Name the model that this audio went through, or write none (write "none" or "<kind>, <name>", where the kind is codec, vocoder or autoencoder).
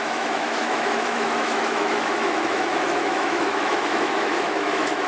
autoencoder, DAC-VAE